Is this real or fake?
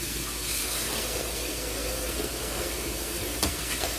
fake